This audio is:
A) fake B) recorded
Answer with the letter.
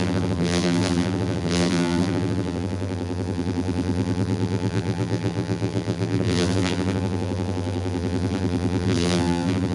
A